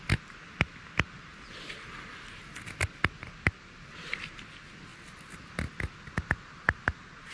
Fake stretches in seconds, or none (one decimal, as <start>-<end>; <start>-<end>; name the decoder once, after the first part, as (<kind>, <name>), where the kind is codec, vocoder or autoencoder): 1.3-1.9 (vocoder, BigVGAN v2); 4.9-5.9

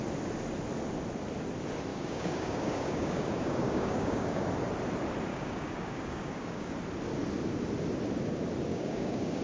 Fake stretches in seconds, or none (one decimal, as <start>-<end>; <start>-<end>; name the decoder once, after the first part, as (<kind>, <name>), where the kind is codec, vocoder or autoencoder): 1.9-4.5 (codec, DAC); 5.3-6.7; 8.7-9.4